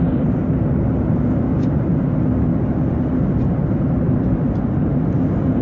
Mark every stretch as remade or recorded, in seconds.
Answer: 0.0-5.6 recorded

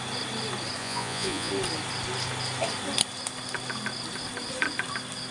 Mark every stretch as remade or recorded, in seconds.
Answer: 0.0-0.8 recorded; 0.8-1.5 remade; 1.5-5.3 recorded

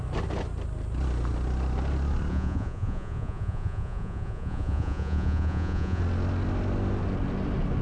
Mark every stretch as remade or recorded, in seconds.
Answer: 0.0-2.3 recorded; 2.3-6.0 remade; 6.0-7.8 recorded

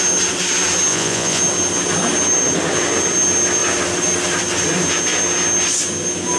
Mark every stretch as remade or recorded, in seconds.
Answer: 0.0-0.9 recorded; 0.9-1.4 remade; 1.4-6.4 recorded

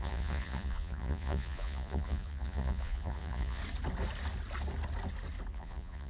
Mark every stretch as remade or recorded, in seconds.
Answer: 0.0-3.6 remade; 3.6-5.5 recorded; 5.5-6.1 remade

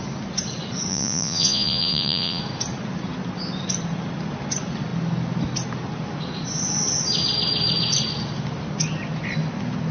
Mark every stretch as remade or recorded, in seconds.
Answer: 0.0-0.9 recorded; 0.9-2.4 remade; 2.4-9.9 recorded

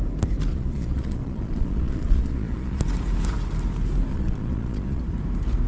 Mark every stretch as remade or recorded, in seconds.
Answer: 0.0-0.5 recorded; 0.5-2.8 remade; 2.8-4.1 recorded; 4.1-5.0 remade; 5.0-5.7 recorded

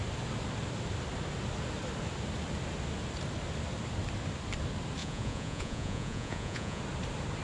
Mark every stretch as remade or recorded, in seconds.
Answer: 0.0-5.0 recorded; 5.0-6.8 remade; 6.8-7.4 recorded